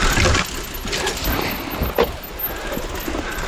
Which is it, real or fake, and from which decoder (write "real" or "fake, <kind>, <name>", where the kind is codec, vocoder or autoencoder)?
real